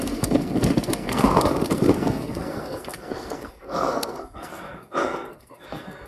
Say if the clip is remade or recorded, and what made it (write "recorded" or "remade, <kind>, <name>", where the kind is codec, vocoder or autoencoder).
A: remade, codec, SNAC